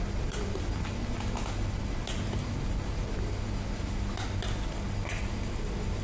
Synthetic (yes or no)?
no